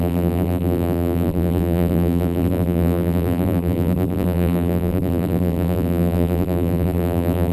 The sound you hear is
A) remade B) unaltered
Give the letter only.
A